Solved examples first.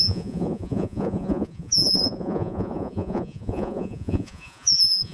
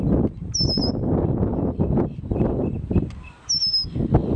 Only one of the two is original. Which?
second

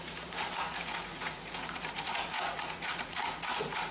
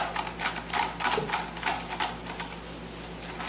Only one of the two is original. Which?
second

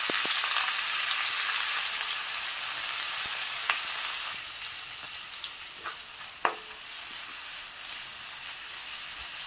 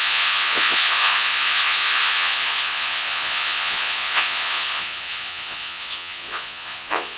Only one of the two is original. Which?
first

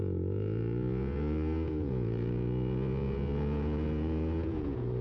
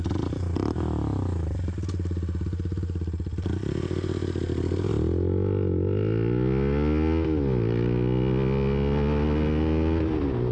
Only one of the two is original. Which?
second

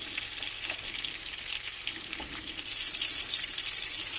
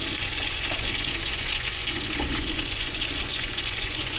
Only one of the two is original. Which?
first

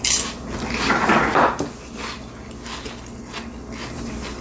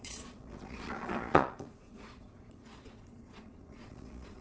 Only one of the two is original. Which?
first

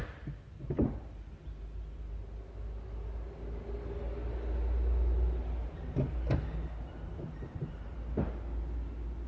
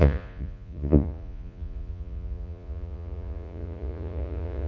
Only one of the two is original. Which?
first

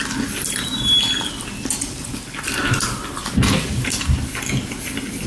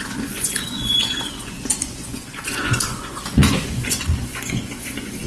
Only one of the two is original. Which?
first